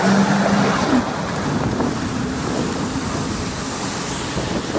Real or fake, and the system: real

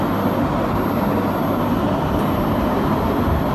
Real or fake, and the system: real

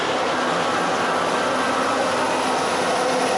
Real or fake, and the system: real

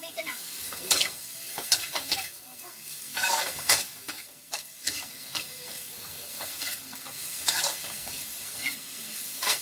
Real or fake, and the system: fake, codec, SNAC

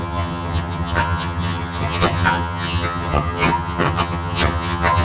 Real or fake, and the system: fake, vocoder, HiFi-GAN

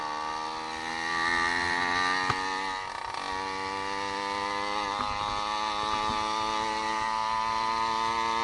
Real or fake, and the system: real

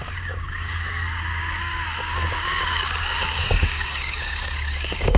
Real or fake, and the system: fake, codec, DAC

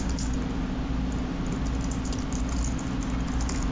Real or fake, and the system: real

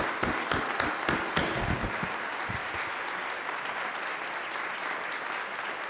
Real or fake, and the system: real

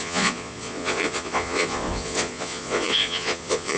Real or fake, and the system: fake, vocoder, Vocos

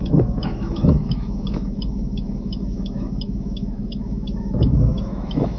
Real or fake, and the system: fake, autoencoder, DAC-VAE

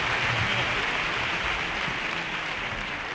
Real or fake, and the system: real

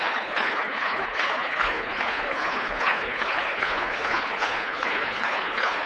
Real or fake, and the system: fake, codec, HILCodec